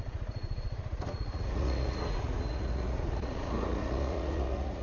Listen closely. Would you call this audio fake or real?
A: fake